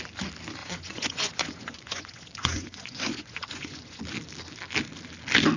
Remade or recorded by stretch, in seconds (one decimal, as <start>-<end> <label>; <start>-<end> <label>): 0.0-0.6 recorded; 0.6-4.0 remade; 4.0-5.6 recorded